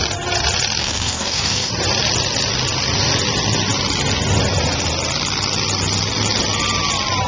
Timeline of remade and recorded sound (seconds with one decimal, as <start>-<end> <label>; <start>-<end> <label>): 0.0-0.8 recorded; 0.8-1.7 remade; 1.7-7.3 recorded

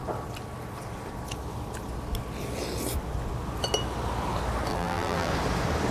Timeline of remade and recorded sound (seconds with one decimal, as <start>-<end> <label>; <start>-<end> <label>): 0.0-4.7 recorded; 4.7-5.3 remade; 5.3-5.9 recorded

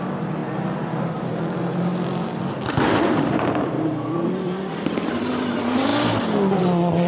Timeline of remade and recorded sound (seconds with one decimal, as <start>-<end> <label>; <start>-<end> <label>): 0.0-0.4 remade; 0.4-1.2 recorded; 1.2-5.9 remade; 5.9-6.6 recorded; 6.6-7.1 remade